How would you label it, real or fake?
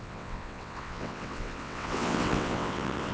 fake